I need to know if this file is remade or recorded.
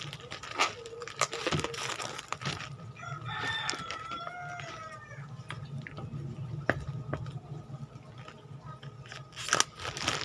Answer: recorded